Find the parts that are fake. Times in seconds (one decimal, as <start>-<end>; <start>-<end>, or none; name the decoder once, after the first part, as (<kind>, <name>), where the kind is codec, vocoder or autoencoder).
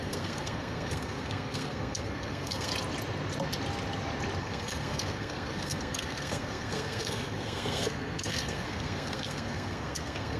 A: 0.0-2.7 (codec, SNAC); 4.4-10.4